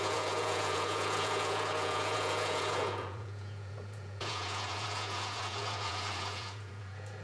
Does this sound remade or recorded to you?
remade